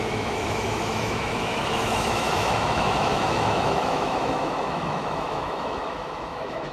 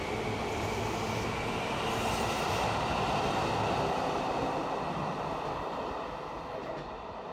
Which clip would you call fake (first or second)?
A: first